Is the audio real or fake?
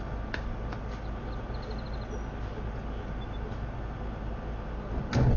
real